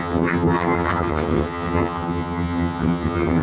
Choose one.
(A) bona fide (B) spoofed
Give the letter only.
B